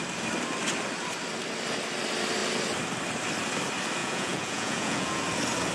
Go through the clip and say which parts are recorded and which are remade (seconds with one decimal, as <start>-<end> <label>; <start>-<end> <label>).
0.0-4.0 recorded; 4.0-5.2 remade; 5.2-5.7 recorded